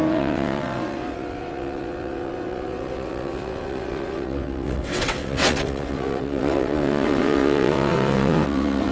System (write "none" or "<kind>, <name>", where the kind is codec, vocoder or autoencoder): vocoder, WaveNeXt